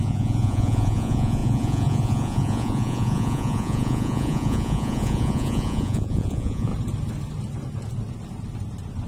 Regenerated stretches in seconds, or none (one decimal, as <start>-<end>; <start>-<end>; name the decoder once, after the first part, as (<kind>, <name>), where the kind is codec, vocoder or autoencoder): 0.0-6.7 (vocoder, Vocos)